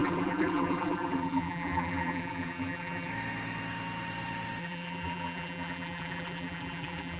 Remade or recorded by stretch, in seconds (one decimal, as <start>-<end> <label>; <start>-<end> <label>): 0.0-3.1 remade; 3.1-4.6 recorded; 4.6-7.2 remade